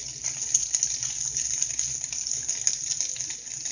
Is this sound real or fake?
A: real